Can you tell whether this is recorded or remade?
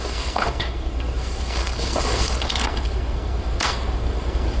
remade